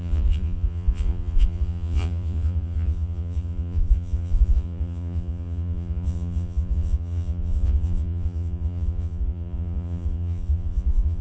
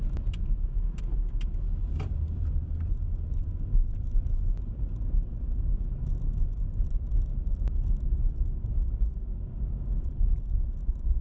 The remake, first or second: first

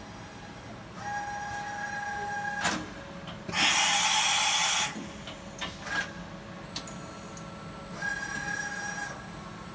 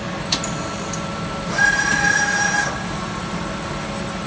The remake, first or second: second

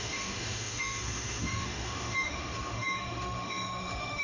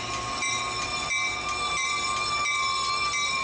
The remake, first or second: first